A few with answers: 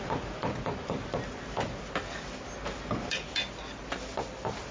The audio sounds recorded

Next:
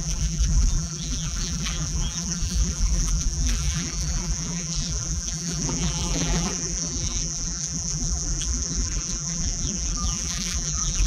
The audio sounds remade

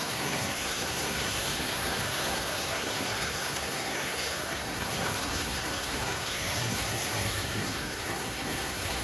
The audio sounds remade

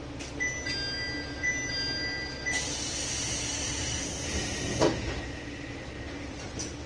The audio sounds recorded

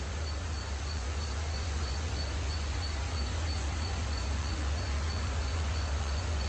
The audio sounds remade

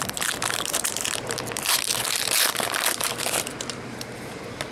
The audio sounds remade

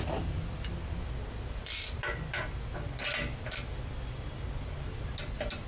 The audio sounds recorded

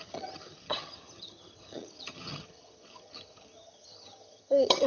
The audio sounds remade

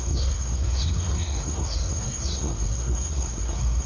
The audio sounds remade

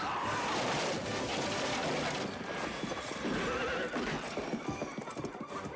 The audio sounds recorded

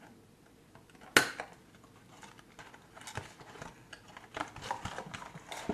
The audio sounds recorded